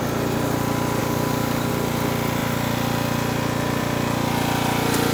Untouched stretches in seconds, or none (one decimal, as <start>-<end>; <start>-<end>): 0.0-1.0; 1.7-5.1